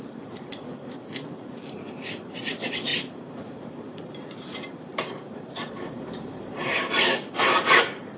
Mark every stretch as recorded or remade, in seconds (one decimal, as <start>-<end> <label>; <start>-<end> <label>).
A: 0.0-8.2 remade